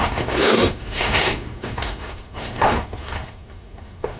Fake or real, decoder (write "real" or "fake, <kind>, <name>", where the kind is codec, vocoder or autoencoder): fake, codec, SNAC